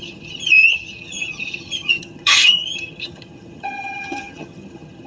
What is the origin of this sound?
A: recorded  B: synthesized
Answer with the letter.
B